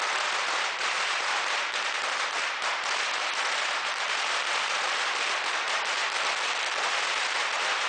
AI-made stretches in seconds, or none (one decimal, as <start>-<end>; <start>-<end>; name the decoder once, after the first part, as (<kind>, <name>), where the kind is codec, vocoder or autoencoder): 0.0-6.0 (vocoder, BigVGAN v2); 6.8-7.9